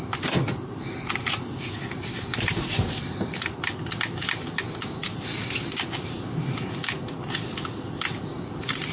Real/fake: real